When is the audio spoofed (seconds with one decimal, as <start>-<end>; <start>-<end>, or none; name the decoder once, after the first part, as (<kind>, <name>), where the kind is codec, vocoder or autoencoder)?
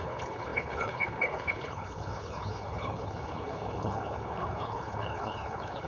0.0-5.9 (codec, HILCodec)